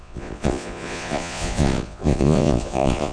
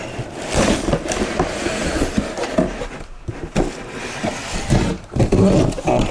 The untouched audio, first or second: second